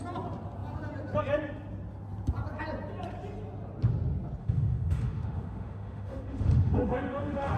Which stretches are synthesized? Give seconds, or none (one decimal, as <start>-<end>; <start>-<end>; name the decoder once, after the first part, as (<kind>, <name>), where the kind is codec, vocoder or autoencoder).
4.4-7.6 (autoencoder, DAC-VAE)